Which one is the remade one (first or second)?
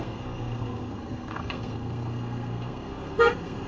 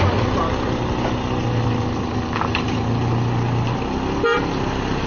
first